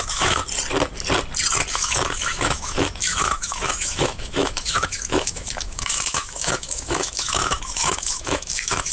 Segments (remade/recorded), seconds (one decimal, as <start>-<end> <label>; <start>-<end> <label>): 0.0-0.4 remade; 0.4-1.7 recorded; 1.7-8.9 remade